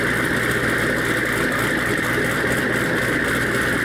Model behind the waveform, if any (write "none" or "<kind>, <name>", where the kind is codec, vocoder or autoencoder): none